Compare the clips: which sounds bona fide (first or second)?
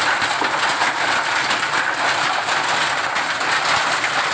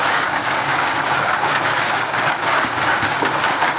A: first